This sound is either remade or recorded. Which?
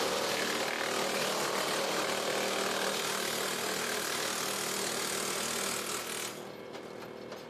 recorded